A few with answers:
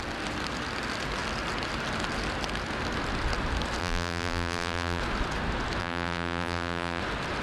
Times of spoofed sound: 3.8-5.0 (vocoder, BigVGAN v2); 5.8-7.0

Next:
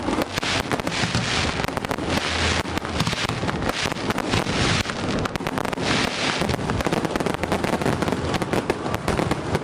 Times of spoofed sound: 3.4-5.2 (vocoder, BigVGAN v2)